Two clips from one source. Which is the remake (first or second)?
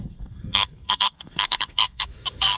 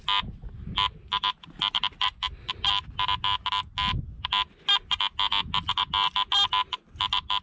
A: first